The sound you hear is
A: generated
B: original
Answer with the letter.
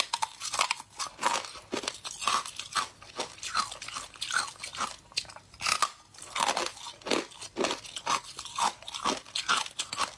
B